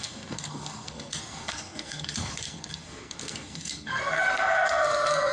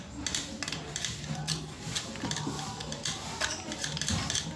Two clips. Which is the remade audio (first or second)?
first